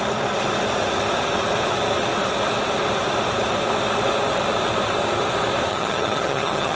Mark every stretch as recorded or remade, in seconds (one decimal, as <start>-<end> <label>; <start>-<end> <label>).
0.0-5.7 recorded; 5.7-6.8 remade